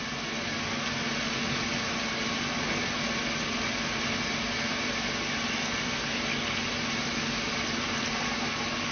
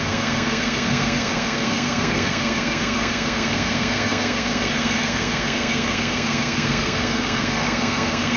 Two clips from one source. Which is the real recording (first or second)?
first